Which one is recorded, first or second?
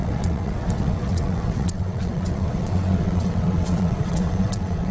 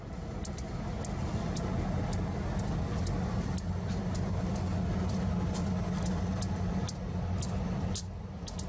second